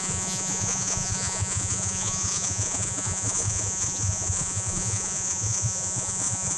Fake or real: fake